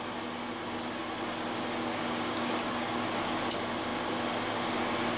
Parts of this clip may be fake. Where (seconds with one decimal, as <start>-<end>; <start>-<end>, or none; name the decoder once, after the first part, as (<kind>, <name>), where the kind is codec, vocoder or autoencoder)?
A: 1.9-3.0 (codec, DAC)